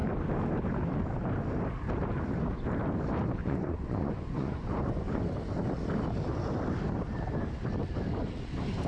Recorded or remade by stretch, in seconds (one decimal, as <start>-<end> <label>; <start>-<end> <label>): 0.0-3.4 recorded; 3.4-5.2 remade; 5.2-8.9 recorded